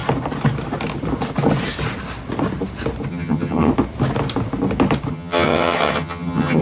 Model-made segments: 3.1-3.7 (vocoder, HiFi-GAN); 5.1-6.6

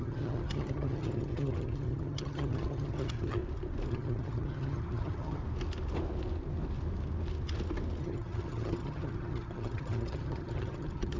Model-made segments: 0.0-3.4 (vocoder, HiFi-GAN); 3.9-5.4; 8.0-11.2